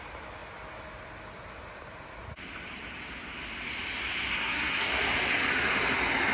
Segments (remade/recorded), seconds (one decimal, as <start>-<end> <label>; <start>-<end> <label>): 0.0-4.3 recorded; 4.3-4.9 remade; 4.9-6.3 recorded